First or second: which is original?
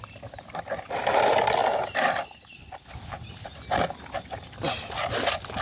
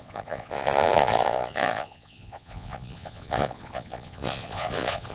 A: first